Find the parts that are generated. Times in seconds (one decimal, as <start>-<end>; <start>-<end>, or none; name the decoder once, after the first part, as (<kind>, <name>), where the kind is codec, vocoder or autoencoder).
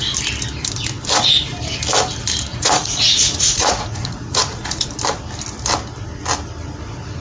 2.5-4.9 (vocoder, Vocos)